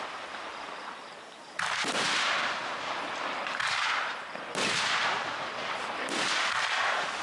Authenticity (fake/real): real